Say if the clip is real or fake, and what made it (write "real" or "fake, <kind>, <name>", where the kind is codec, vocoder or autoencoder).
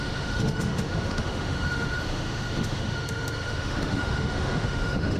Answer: fake, autoencoder, DAC-VAE